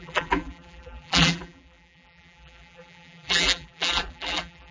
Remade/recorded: remade